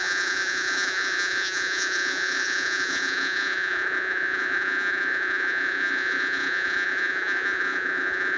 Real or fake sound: fake